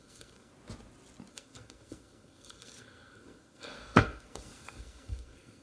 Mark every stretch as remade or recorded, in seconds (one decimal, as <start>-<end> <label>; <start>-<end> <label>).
0.0-0.5 remade; 0.5-1.3 recorded; 1.3-5.6 remade